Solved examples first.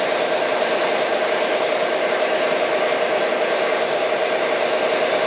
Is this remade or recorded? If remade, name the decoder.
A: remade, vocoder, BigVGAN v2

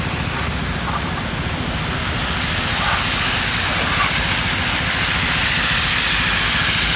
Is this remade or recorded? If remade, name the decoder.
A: recorded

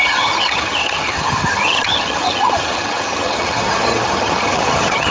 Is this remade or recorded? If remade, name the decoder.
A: remade, vocoder, HiFi-GAN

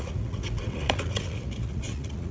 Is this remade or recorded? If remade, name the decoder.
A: remade, vocoder, Vocos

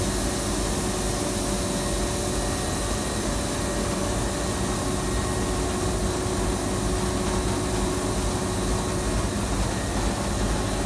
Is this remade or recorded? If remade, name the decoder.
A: recorded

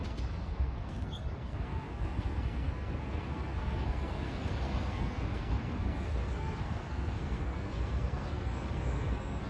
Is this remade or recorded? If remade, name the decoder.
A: remade, codec, SNAC